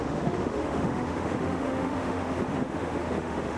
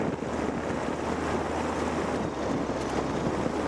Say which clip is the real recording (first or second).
second